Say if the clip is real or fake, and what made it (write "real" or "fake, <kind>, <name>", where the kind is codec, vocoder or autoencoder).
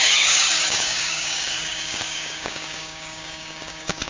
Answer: fake, codec, DAC